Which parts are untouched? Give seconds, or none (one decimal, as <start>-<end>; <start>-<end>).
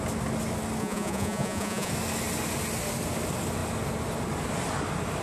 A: 0.0-0.8; 1.9-5.2